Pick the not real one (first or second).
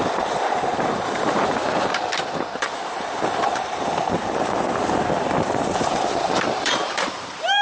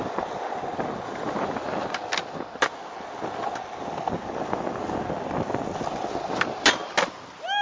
first